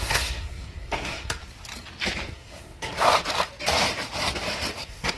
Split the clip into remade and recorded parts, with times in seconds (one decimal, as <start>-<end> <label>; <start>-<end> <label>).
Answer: 0.0-1.4 remade; 1.4-2.3 recorded; 2.3-3.1 remade; 3.1-4.8 recorded; 4.8-5.2 remade